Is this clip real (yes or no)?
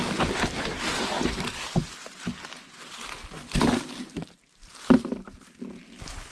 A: yes